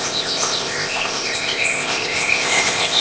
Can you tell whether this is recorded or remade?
remade